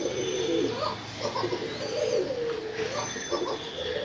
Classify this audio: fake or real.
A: real